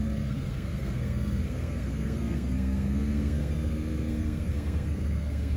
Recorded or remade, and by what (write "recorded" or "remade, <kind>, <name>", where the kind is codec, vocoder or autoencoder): remade, codec, SNAC